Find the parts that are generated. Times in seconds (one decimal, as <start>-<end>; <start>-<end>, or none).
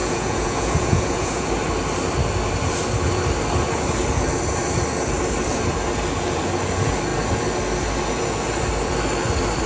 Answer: 0.0-1.5